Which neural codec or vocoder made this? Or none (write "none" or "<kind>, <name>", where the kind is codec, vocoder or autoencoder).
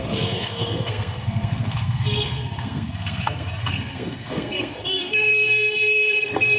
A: codec, SNAC